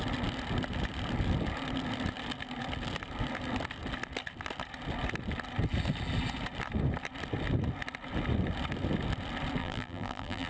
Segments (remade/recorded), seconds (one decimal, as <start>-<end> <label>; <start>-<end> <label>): 0.0-9.6 recorded; 9.6-10.5 remade